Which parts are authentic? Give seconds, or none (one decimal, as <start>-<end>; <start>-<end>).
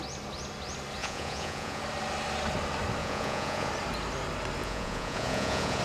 0.0-1.0; 1.8-3.0; 3.7-4.6